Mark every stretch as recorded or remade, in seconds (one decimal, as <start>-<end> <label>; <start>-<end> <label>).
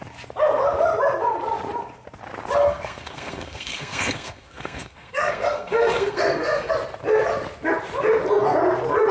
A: 0.0-2.6 recorded; 2.6-6.7 remade; 6.7-9.1 recorded